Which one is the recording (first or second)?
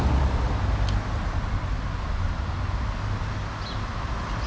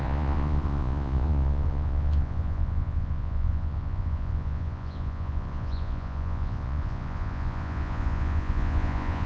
first